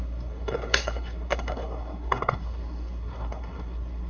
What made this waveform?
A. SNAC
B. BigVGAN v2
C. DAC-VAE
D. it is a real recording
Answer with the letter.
A